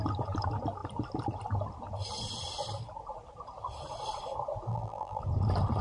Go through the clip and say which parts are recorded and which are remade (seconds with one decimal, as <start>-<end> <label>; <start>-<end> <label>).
0.0-4.7 recorded; 4.7-5.2 remade; 5.2-5.8 recorded